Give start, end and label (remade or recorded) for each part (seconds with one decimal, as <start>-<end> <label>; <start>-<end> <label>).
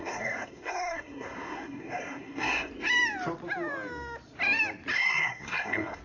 0.0-2.7 remade; 2.7-4.9 recorded; 4.9-6.0 remade